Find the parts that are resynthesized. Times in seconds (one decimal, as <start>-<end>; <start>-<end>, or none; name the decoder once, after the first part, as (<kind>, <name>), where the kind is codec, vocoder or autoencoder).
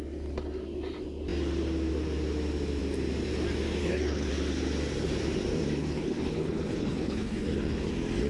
3.8-4.3 (codec, HILCodec); 5.8-7.9